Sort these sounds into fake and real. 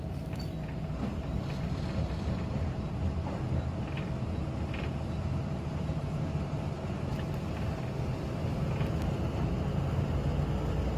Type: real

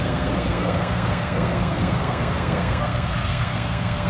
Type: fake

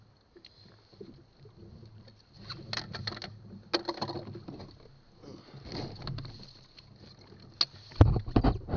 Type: real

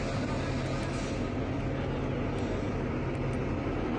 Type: real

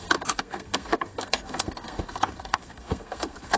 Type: fake